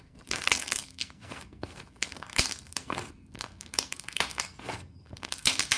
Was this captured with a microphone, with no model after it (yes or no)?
no